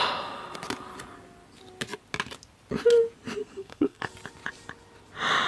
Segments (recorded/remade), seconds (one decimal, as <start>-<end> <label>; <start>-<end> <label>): 0.0-3.4 recorded; 3.4-4.1 remade; 4.1-5.5 recorded